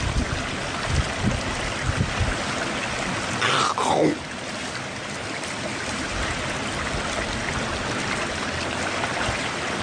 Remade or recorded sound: recorded